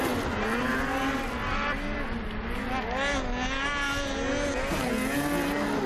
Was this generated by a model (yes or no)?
no